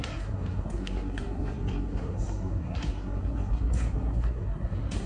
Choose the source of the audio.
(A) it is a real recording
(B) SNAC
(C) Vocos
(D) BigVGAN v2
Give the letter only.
B